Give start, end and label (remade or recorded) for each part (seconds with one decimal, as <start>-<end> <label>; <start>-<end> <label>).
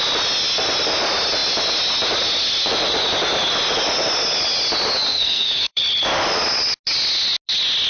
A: 0.0-5.1 recorded; 5.1-5.8 remade; 5.8-7.9 recorded